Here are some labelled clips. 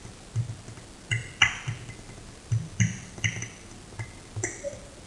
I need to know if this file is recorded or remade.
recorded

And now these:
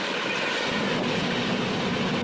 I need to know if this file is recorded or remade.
recorded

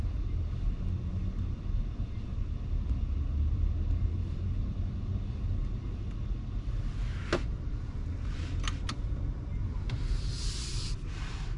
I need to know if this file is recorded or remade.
recorded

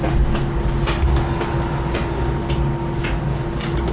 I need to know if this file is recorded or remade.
recorded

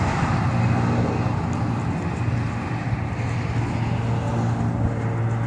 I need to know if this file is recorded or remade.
recorded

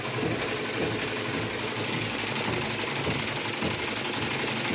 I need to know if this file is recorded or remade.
recorded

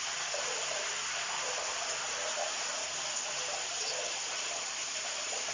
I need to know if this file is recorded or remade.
recorded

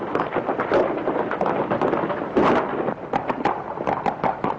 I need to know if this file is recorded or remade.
recorded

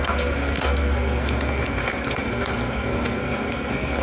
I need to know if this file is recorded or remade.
remade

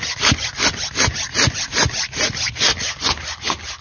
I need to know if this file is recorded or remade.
recorded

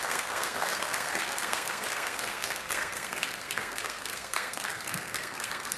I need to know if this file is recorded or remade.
remade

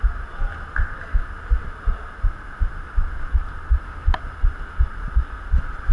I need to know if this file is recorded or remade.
recorded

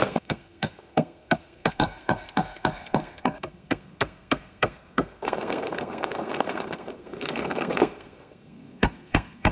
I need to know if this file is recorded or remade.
remade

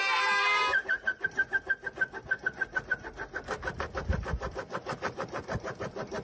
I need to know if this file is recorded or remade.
recorded